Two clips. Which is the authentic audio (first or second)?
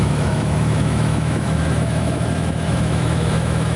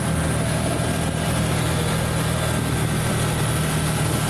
second